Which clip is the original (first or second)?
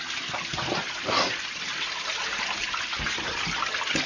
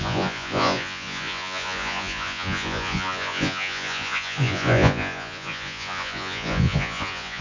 first